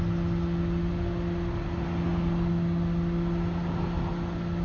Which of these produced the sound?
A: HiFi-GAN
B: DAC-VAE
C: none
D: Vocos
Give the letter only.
C